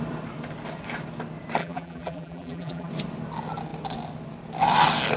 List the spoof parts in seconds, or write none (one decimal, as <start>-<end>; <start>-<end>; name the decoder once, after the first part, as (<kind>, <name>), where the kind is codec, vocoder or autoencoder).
1.6-2.9 (vocoder, BigVGAN v2)